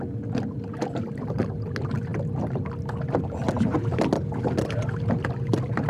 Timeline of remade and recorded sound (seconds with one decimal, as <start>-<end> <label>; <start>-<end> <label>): 0.0-5.9 recorded